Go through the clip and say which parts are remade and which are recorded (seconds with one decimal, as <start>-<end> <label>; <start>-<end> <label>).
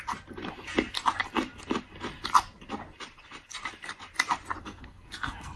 0.0-4.6 recorded; 4.6-5.6 remade